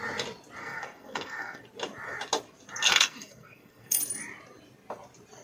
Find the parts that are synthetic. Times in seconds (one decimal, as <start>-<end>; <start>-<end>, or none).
0.6-1.6; 2.9-4.0